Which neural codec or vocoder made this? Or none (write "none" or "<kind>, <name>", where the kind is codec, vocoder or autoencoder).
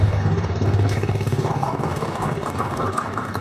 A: codec, DAC